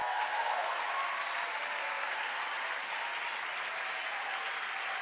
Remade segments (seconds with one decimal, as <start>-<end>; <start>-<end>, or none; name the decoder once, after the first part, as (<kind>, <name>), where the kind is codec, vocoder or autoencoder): 0.0-0.8 (codec, SNAC); 1.8-2.4